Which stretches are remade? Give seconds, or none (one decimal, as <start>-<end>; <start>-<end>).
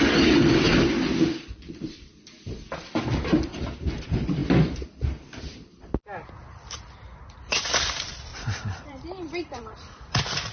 8.3-9.6